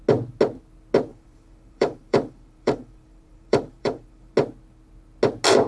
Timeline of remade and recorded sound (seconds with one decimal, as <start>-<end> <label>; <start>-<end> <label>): 0.0-1.1 recorded; 1.1-4.3 remade; 4.3-5.7 recorded